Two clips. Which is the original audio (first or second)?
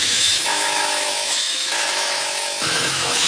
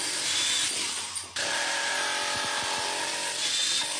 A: second